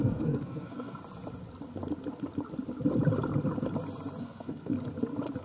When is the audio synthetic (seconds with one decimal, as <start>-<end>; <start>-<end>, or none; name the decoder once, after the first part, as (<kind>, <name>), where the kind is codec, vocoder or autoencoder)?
0.0-1.0 (codec, SNAC); 4.2-4.7